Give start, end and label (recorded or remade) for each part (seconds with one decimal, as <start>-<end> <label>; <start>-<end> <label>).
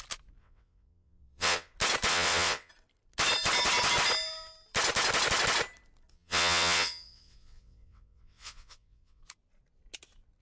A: 0.0-0.4 recorded; 0.4-1.7 remade; 1.7-2.1 recorded; 2.1-2.7 remade; 2.7-6.1 recorded; 6.1-9.2 remade; 9.2-10.4 recorded